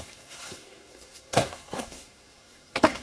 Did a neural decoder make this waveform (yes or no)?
yes